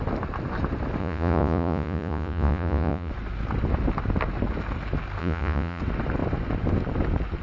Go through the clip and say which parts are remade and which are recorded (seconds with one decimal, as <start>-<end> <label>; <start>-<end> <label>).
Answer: 0.0-1.0 recorded; 1.0-3.1 remade; 3.1-5.2 recorded; 5.2-5.8 remade; 5.8-7.4 recorded